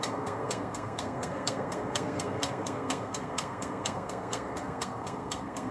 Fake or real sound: fake